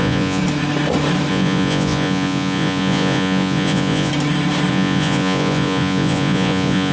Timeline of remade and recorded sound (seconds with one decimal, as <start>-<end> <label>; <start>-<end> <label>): 0.0-0.4 remade; 0.4-1.3 recorded; 1.3-4.1 remade; 4.1-4.7 recorded; 4.7-6.9 remade

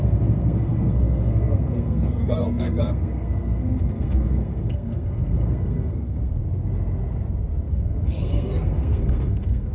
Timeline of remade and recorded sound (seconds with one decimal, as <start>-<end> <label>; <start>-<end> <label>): 0.0-6.4 remade; 6.4-7.7 recorded; 7.7-9.7 remade

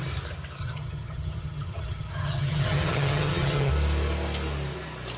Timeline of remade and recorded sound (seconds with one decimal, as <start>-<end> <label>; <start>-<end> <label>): 0.0-0.6 recorded; 0.6-3.7 remade; 3.7-5.2 recorded

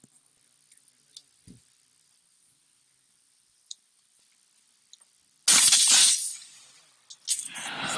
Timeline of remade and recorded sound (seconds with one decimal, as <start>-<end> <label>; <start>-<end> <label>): 0.0-8.0 recorded

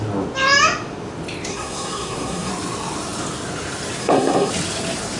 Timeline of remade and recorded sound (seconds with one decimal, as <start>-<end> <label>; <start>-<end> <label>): 0.0-1.5 recorded; 1.5-2.5 remade; 2.5-4.0 recorded; 4.0-4.5 remade; 4.5-5.2 recorded